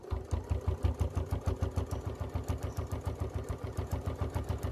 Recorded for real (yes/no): yes